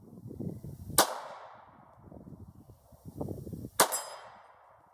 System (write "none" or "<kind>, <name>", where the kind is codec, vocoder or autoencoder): none